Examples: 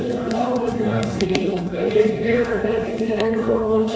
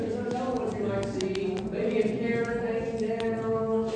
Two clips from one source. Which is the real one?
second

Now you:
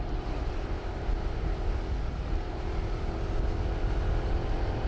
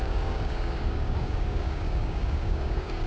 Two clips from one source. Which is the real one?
first